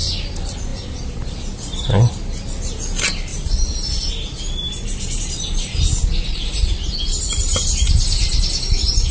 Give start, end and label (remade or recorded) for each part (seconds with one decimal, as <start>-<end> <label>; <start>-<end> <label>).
0.0-9.1 recorded